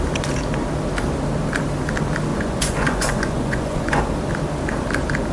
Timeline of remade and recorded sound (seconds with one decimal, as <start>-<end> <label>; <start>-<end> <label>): 0.0-2.3 recorded; 2.3-4.0 remade; 4.0-5.3 recorded